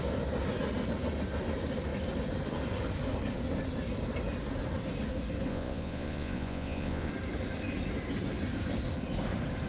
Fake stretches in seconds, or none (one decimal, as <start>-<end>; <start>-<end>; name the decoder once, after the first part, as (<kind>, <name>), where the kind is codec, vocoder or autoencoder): 5.5-7.1 (vocoder, Vocos)